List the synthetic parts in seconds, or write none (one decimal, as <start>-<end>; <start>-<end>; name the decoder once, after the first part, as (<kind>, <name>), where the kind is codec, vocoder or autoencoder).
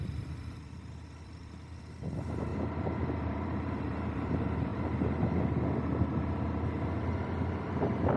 0.0-2.5 (vocoder, BigVGAN v2); 3.3-4.7; 7.0-8.2